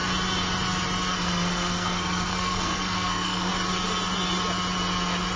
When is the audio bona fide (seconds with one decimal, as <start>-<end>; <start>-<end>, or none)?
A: 0.0-1.1; 3.5-5.4